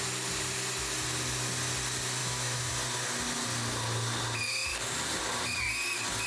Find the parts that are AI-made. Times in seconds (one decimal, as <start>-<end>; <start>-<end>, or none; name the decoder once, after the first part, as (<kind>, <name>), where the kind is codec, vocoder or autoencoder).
2.2-2.7 (autoencoder, DAC-VAE)